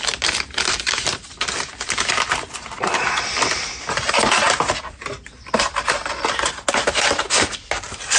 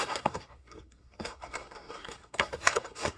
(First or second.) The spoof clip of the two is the second